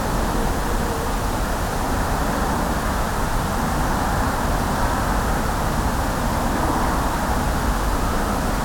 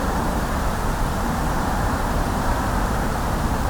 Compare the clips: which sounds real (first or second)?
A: first